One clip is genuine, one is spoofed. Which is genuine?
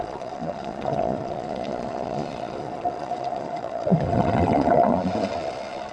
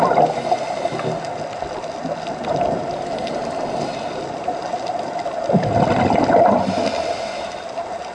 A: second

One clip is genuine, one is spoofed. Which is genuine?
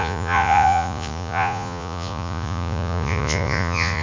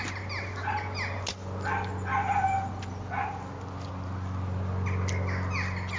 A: second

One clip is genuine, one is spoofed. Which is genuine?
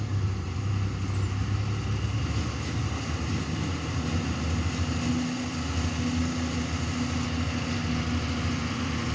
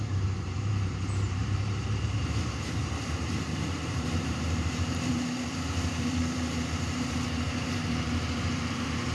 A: first